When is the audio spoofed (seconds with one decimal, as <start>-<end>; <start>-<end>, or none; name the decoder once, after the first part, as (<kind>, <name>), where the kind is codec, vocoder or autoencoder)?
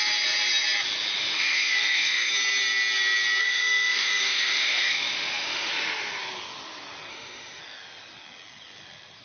1.2-2.3 (autoencoder, DAC-VAE); 3.4-5.7; 7.1-7.6